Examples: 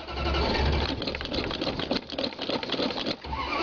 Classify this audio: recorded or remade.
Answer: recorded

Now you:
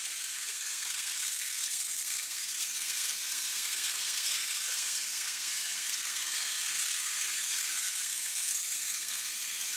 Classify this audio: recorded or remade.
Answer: remade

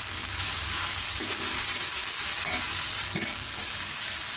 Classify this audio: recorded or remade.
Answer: remade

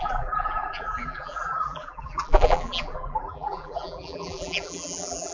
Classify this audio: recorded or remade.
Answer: remade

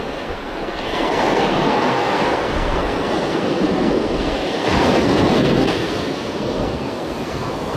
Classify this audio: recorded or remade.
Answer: remade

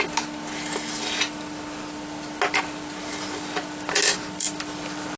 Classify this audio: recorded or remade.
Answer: recorded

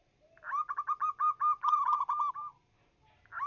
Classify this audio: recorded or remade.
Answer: recorded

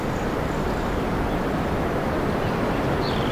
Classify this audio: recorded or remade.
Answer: recorded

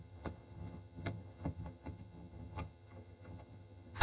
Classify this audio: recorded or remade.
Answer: remade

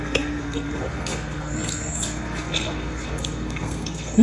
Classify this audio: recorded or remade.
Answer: remade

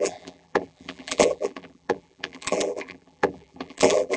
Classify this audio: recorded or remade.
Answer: remade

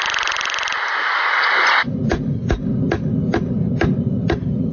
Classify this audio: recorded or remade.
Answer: recorded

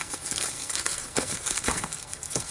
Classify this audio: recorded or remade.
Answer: remade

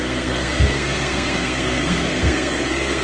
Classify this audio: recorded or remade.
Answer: remade